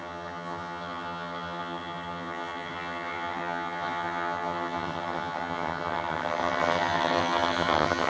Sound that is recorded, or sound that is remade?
remade